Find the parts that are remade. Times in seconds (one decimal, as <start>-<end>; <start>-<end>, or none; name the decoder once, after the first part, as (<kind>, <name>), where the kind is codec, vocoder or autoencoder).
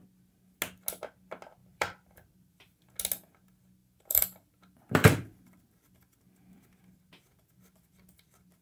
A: 1.6-2.8 (vocoder, BigVGAN v2); 3.8-6.8